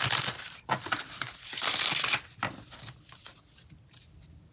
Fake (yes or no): yes